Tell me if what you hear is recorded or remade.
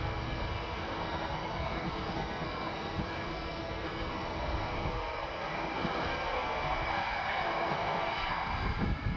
remade